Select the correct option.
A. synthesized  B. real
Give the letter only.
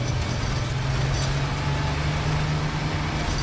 B